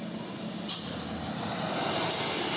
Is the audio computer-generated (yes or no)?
no